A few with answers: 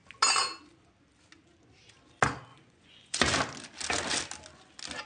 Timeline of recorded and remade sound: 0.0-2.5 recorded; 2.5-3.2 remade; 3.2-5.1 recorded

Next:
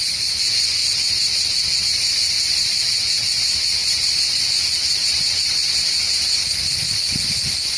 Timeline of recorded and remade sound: 0.0-3.8 recorded; 3.8-4.4 remade; 4.4-7.8 recorded

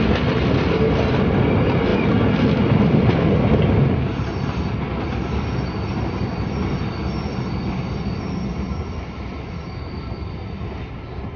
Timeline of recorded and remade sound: 0.0-11.4 recorded

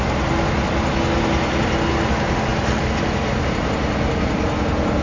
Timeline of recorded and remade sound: 0.0-2.5 recorded; 2.5-3.7 remade; 3.7-5.0 recorded

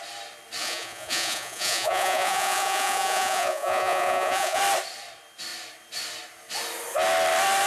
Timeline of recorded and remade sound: 0.0-0.6 recorded; 0.6-4.6 remade; 4.6-7.7 recorded